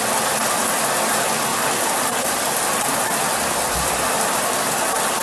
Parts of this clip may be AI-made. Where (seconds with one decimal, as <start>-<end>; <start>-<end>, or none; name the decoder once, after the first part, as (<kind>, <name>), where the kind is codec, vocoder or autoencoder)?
none